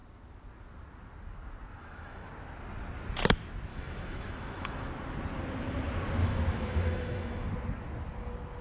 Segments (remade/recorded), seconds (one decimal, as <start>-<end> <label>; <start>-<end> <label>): 0.0-1.8 recorded; 1.8-2.3 remade; 2.3-3.7 recorded; 3.7-4.9 remade; 4.9-6.2 recorded; 6.2-7.5 remade; 7.5-8.6 recorded